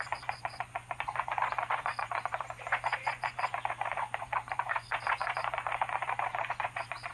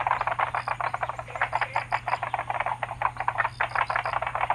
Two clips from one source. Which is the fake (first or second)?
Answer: first